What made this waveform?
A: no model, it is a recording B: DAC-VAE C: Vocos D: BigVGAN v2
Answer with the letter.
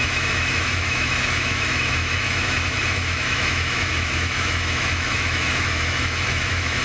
B